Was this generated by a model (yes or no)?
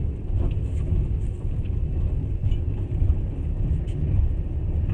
no